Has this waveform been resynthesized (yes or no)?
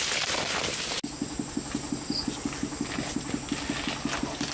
no